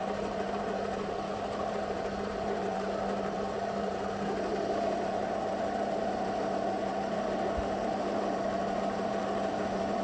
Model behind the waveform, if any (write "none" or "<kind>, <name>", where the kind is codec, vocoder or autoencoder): vocoder, BigVGAN v2